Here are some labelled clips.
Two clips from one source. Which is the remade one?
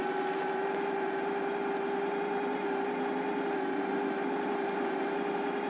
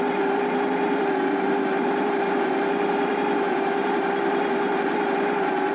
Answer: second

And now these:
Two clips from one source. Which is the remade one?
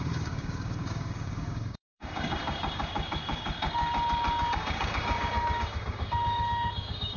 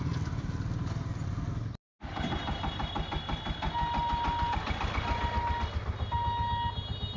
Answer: first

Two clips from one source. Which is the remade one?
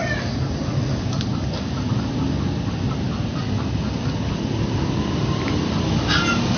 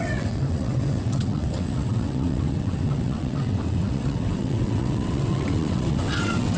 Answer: second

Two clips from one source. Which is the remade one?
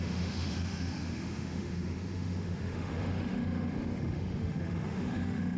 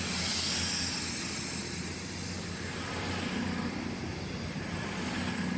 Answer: first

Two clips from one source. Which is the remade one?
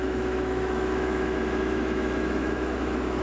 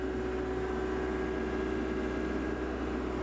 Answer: first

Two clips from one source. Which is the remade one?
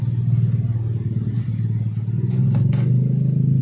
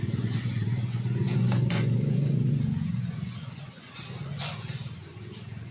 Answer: second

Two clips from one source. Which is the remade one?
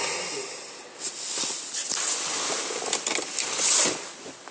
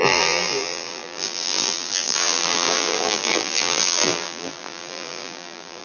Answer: second